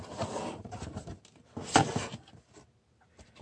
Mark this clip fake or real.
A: real